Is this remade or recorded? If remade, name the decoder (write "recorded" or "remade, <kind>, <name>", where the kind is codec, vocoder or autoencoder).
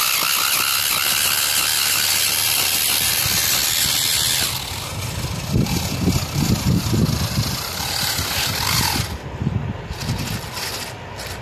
recorded